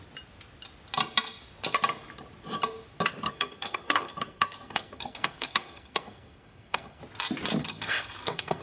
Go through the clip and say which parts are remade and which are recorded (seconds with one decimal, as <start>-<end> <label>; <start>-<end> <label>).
0.0-3.1 recorded; 3.1-7.0 remade; 7.0-7.6 recorded; 7.6-8.6 remade